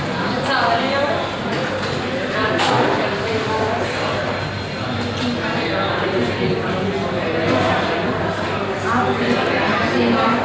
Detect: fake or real real